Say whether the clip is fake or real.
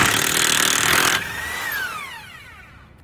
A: real